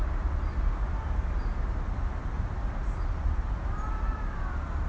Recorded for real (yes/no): yes